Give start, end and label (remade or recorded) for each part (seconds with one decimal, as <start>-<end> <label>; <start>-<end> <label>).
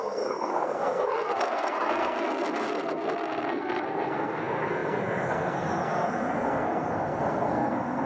0.0-8.1 remade